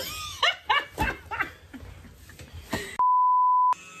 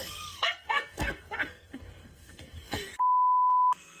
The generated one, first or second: second